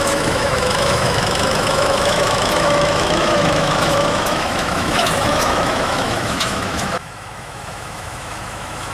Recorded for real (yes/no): no